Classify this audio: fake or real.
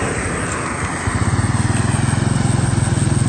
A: real